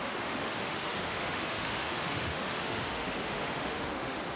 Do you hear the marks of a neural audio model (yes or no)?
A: yes